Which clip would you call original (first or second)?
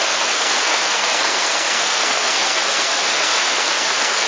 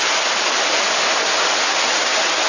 second